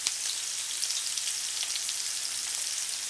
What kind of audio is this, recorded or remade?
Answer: recorded